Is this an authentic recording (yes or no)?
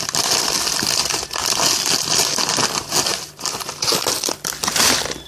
yes